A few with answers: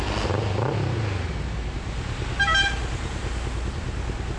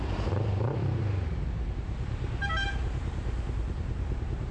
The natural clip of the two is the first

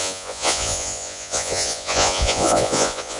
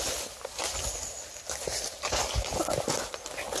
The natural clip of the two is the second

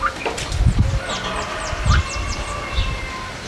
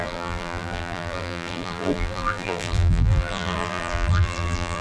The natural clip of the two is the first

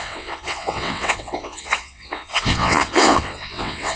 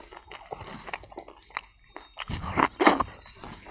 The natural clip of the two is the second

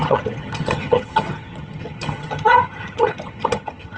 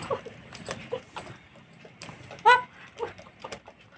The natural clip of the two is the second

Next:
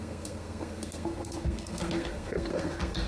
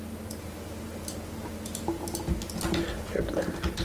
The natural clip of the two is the second